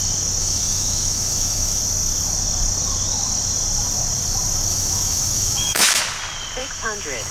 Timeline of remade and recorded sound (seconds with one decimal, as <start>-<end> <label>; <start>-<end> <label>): 0.0-0.4 recorded; 0.4-1.8 remade; 1.8-4.7 recorded; 4.7-6.0 remade; 6.0-6.6 recorded; 6.6-7.3 remade